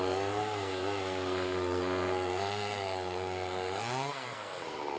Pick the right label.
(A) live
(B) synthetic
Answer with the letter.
B